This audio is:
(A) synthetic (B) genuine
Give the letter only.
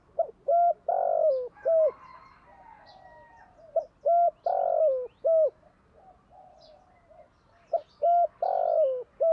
B